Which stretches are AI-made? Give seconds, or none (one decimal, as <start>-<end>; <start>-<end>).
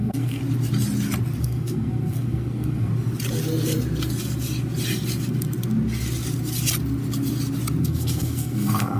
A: 0.0-0.4; 1.4-2.9; 7.8-9.0